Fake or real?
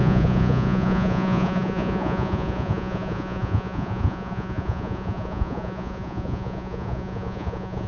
fake